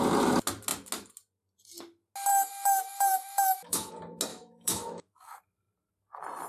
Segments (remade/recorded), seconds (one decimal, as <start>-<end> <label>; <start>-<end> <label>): 0.0-2.3 recorded; 2.3-3.9 remade; 3.9-4.3 recorded; 4.3-5.4 remade; 5.4-6.5 recorded